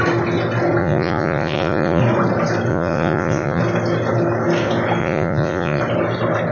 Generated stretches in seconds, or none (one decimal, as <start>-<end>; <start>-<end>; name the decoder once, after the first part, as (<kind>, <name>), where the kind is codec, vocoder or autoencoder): 0.8-2.0 (vocoder, Vocos); 2.7-3.6; 5.0-5.8